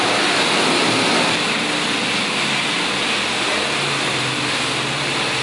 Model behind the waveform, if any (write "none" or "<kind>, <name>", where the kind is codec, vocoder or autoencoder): none